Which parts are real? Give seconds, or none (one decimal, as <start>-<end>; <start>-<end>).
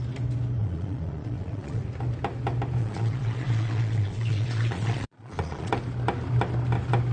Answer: 0.0-0.6; 1.8-2.8; 5.7-7.1